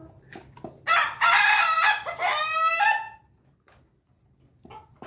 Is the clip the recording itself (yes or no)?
yes